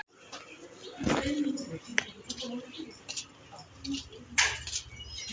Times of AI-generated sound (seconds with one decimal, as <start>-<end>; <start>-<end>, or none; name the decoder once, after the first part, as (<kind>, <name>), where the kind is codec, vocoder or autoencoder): none